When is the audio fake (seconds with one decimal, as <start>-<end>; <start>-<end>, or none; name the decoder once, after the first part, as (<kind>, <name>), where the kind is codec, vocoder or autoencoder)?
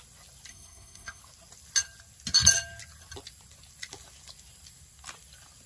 0.5-1.2 (codec, SNAC)